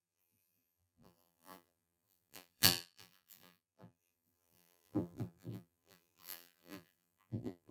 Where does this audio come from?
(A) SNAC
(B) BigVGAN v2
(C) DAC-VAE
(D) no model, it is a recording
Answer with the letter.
B